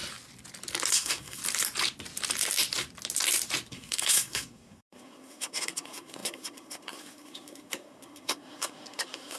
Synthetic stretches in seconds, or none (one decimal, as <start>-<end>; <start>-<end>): 0.9-1.4; 3.7-9.4